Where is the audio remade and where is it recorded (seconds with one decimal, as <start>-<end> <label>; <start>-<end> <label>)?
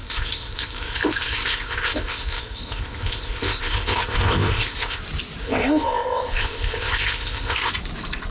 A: 0.0-5.0 remade; 5.0-5.4 recorded; 5.4-7.7 remade; 7.7-8.3 recorded